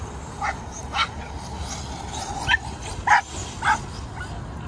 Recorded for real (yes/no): yes